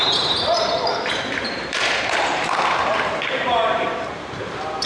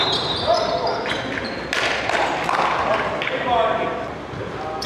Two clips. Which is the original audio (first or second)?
second